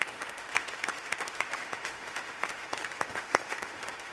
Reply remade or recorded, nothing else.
remade